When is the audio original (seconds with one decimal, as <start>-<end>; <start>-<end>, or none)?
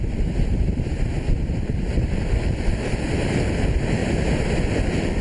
4.0-4.8